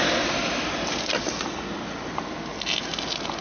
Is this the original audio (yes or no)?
yes